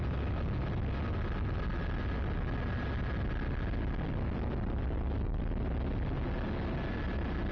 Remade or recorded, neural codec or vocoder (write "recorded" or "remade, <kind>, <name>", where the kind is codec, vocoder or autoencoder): recorded